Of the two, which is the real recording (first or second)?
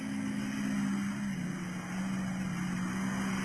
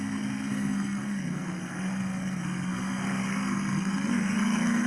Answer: first